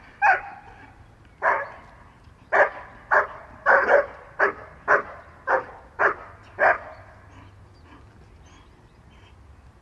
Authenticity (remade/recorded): recorded